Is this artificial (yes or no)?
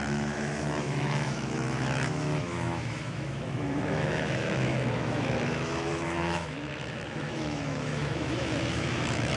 yes